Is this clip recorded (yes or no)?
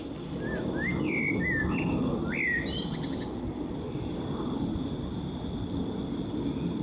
yes